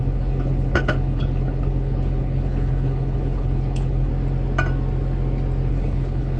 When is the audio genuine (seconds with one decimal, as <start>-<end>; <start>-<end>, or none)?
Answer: 4.1-5.7

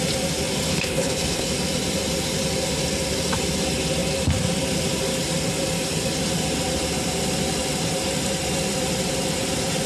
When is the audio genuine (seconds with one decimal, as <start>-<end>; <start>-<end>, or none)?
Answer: 0.0-0.7; 1.5-9.9

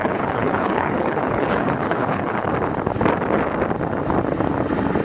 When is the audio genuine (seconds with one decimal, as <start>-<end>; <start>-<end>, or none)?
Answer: 2.5-5.0

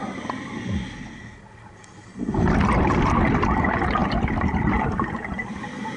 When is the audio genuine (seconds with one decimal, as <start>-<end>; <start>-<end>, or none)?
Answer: 0.0-6.0

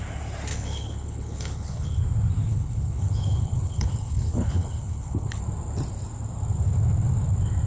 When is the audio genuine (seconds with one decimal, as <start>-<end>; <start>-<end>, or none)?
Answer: 0.0-0.5; 2.0-2.5; 5.4-7.7

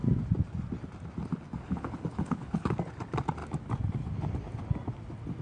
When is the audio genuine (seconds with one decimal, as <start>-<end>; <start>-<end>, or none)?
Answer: 0.0-1.6; 2.8-5.4

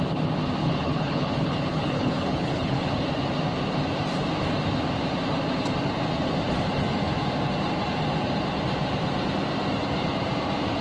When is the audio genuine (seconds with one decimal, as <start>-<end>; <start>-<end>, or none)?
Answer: 0.0-0.6; 2.9-10.8

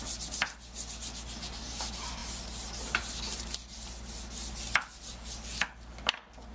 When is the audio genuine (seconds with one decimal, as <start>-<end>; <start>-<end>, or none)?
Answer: 0.0-6.5